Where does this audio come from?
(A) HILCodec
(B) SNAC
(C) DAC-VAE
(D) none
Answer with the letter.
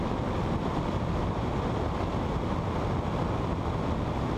D